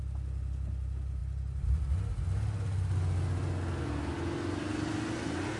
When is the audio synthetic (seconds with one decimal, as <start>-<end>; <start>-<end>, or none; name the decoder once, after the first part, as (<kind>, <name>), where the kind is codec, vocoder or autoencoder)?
none